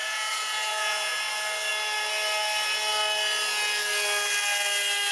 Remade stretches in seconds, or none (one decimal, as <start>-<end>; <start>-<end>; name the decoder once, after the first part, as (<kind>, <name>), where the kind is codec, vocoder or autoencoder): 0.0-1.2 (vocoder, Vocos)